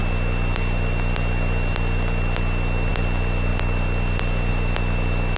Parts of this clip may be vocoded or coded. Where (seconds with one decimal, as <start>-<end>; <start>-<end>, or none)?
none